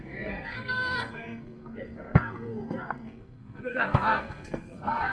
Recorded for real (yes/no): no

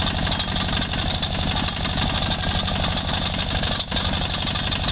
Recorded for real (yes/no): yes